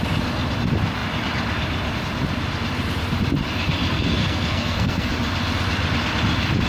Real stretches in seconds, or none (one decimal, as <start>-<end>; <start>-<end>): 0.0-3.9; 5.1-6.7